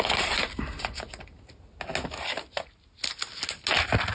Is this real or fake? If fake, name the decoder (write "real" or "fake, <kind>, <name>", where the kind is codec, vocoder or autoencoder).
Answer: real